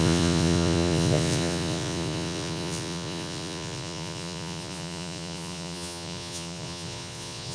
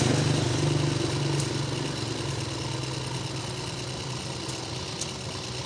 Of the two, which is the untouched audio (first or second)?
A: second